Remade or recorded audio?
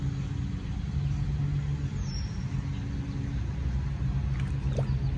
recorded